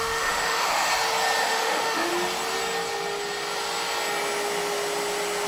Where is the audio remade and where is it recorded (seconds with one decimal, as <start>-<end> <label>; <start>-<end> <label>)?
0.0-0.9 remade; 0.9-1.4 recorded; 1.4-2.1 remade; 2.1-5.5 recorded